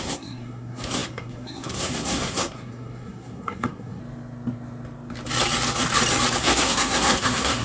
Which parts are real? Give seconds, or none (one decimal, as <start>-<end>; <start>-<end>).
4.0-6.4